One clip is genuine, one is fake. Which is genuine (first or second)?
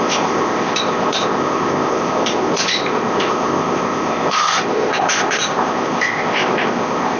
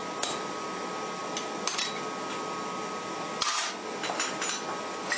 second